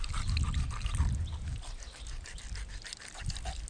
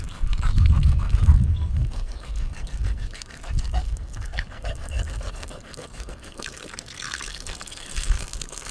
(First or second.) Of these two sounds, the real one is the first